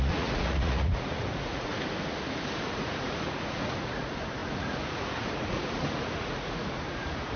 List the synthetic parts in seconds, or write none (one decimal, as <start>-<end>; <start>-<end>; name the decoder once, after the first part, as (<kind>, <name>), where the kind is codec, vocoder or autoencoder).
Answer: 0.0-1.7 (vocoder, Vocos); 2.6-7.4